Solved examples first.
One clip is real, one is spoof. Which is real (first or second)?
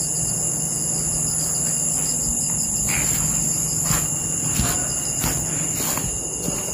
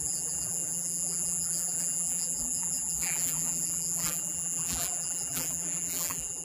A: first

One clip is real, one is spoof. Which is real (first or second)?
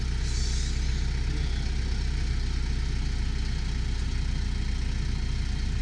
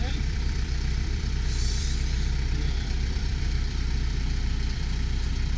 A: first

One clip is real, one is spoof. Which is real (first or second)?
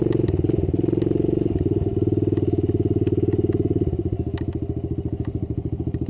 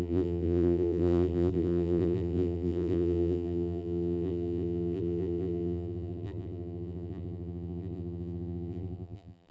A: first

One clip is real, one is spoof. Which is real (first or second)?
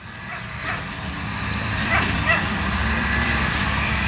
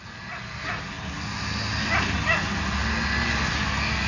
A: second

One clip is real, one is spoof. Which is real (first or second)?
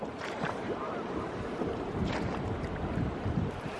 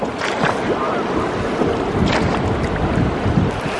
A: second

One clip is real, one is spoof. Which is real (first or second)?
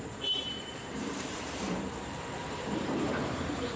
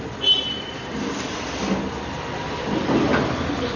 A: second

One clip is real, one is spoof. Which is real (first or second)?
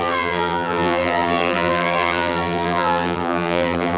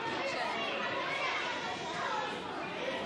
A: second